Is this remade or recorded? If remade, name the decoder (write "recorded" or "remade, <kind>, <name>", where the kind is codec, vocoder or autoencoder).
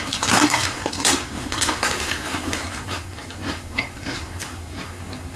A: remade, codec, SNAC